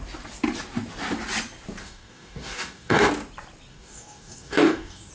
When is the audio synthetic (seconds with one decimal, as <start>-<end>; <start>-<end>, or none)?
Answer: 1.8-3.1; 3.7-5.1